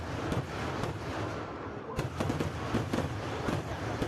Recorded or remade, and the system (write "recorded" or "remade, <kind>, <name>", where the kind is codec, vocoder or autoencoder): recorded